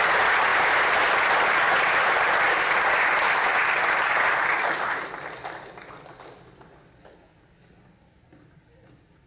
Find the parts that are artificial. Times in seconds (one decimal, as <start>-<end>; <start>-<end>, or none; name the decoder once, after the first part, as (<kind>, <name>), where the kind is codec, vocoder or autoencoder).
none